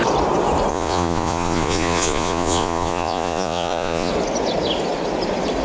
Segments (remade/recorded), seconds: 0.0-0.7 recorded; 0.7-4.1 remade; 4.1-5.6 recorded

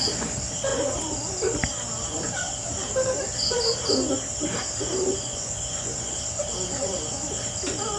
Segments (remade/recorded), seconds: 0.0-5.2 recorded; 5.2-6.2 remade; 6.2-8.0 recorded